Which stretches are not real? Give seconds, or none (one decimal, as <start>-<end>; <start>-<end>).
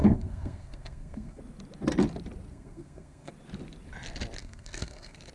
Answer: 0.0-1.4; 2.5-3.3; 4.4-5.3